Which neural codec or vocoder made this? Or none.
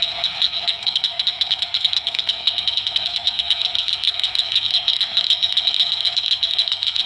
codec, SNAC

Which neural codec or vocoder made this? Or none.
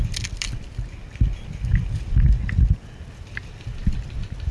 none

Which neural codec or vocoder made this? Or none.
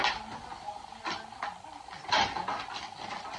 none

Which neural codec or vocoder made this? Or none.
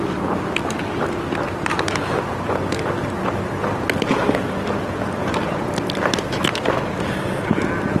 none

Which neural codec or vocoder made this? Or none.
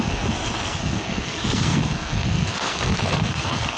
codec, SNAC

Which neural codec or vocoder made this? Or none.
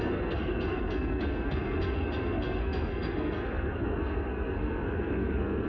codec, SNAC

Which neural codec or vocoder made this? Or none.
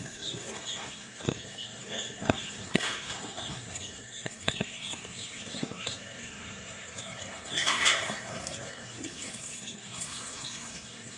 codec, SNAC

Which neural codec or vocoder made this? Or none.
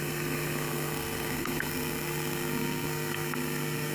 codec, SNAC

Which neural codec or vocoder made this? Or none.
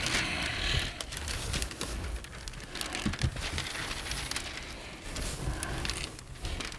none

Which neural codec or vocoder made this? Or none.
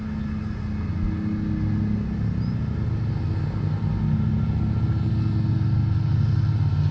none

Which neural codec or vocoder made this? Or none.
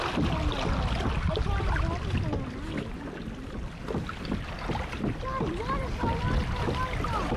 none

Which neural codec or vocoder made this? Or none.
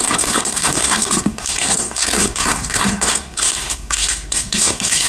codec, SNAC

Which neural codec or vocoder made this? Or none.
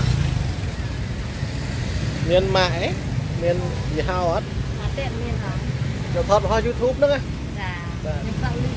none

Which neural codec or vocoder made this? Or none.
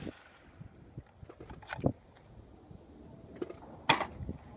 none